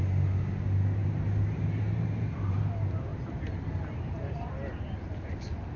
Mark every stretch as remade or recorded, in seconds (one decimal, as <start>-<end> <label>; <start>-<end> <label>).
0.0-1.0 recorded; 1.0-2.6 remade; 2.6-3.1 recorded; 3.1-5.3 remade; 5.3-5.8 recorded